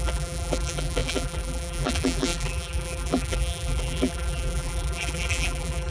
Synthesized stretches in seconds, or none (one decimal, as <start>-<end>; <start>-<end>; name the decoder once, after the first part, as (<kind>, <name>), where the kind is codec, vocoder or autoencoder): 0.0-5.9 (vocoder, BigVGAN v2)